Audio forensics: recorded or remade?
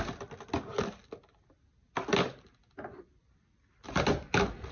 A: recorded